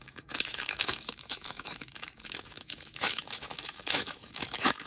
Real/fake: fake